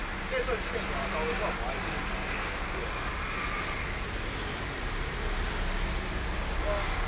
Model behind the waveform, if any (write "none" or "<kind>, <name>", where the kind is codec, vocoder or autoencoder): none